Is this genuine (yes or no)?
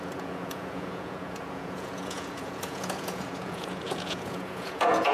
no